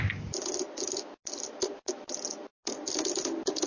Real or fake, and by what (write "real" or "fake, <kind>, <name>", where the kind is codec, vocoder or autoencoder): real